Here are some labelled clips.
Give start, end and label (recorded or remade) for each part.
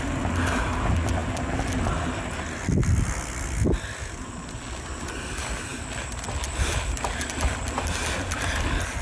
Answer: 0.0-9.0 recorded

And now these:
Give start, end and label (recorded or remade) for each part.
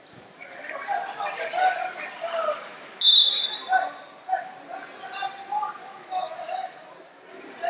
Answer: 0.0-2.7 recorded; 2.7-3.4 remade; 3.4-5.8 recorded; 5.8-6.7 remade; 6.7-7.7 recorded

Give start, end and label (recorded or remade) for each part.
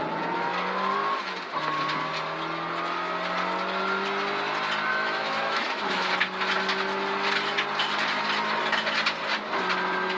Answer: 0.0-4.9 recorded; 4.9-6.1 remade; 6.1-10.2 recorded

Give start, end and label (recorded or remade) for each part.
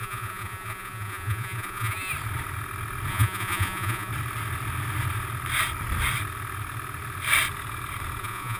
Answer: 0.0-2.1 remade; 2.1-3.1 recorded; 3.1-4.1 remade; 4.1-8.2 recorded; 8.2-8.6 remade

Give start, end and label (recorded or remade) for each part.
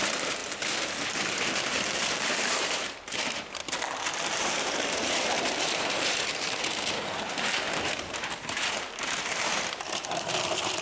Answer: 0.0-3.6 remade; 3.6-4.3 recorded; 4.3-10.8 remade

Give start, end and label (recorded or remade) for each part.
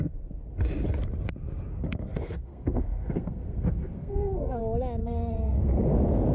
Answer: 0.0-1.7 recorded; 1.7-4.6 remade; 4.6-5.0 recorded; 5.0-5.7 remade; 5.7-6.3 recorded